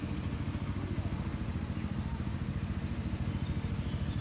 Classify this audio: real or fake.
real